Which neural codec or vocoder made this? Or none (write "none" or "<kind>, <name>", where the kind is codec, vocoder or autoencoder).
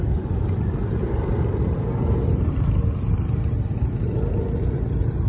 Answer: vocoder, BigVGAN v2